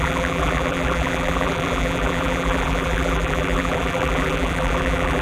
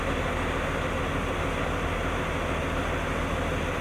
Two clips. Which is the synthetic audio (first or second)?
first